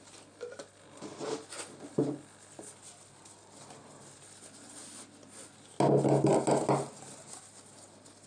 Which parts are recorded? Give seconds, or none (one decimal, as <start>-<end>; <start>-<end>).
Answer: 0.0-8.3